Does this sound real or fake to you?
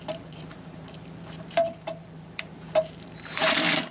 fake